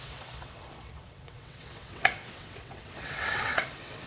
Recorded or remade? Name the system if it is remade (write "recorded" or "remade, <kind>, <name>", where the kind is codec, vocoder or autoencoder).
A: remade, vocoder, WaveNeXt